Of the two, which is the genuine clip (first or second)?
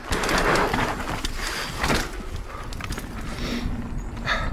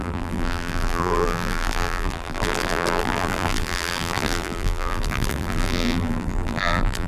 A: first